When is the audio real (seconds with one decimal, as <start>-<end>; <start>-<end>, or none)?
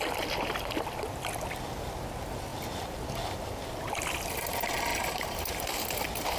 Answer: 0.0-4.9; 5.6-6.4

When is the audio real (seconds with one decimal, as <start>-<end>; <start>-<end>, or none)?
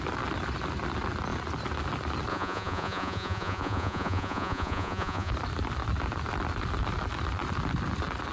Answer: 0.0-2.3; 5.3-8.3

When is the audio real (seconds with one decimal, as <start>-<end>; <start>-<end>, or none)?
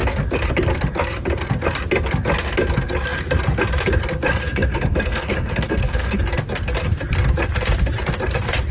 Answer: 0.0-4.3; 6.2-8.7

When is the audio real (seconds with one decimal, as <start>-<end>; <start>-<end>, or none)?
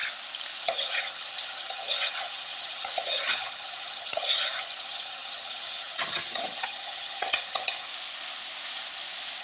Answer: 0.0-0.6; 7.9-9.4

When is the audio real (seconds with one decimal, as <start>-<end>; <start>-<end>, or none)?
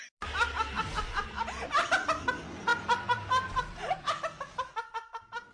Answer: 0.0-5.5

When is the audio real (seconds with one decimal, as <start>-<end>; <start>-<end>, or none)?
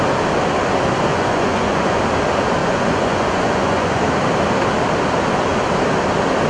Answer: 0.0-1.1; 2.0-2.6; 4.0-6.5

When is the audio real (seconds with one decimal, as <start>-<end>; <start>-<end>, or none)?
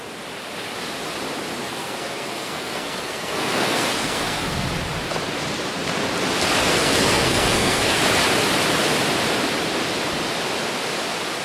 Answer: 0.0-1.6; 4.7-6.6; 8.0-11.4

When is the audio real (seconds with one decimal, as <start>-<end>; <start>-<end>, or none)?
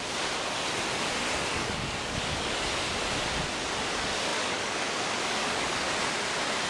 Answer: 0.0-1.5; 2.7-4.3; 5.9-6.7